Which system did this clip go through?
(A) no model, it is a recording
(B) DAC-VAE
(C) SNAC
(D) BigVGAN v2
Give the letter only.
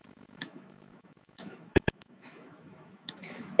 B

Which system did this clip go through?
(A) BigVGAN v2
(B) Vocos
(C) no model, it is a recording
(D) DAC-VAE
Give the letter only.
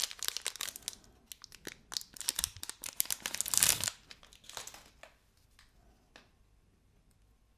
C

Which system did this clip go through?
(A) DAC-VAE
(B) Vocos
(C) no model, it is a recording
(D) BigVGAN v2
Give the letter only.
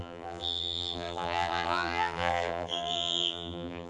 D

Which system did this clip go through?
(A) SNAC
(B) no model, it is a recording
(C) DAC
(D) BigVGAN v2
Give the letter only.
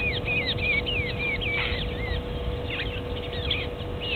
B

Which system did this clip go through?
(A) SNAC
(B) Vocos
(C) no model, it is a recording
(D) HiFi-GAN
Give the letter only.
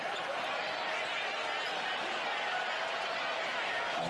C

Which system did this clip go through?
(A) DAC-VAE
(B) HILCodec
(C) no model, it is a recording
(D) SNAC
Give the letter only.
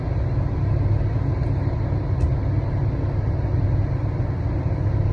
C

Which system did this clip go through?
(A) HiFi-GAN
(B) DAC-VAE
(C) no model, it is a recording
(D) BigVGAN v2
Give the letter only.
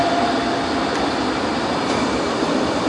D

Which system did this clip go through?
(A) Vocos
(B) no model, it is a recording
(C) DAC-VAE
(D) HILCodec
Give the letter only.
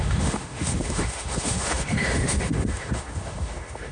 C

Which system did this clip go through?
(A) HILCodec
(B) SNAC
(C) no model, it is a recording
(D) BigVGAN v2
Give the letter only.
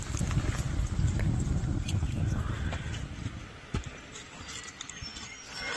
D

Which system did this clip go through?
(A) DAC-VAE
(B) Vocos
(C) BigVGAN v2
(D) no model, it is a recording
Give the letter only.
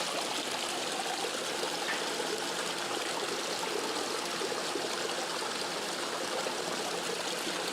D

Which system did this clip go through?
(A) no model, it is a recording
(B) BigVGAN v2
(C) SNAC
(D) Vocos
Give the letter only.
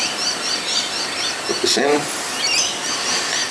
B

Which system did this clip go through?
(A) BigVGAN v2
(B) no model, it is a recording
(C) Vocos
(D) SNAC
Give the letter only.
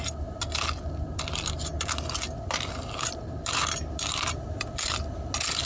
B